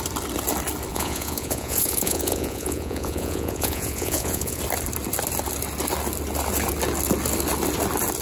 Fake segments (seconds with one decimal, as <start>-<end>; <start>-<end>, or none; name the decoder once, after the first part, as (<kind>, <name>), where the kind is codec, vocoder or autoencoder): 0.9-4.6 (vocoder, Vocos)